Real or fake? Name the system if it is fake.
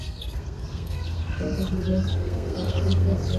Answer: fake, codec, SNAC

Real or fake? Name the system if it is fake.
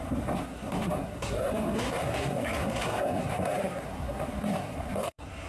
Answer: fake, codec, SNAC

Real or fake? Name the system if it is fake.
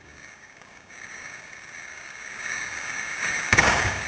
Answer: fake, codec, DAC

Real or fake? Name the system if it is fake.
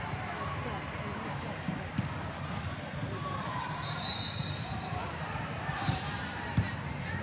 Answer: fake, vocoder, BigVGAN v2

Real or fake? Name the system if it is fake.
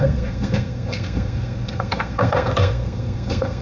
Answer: fake, codec, SNAC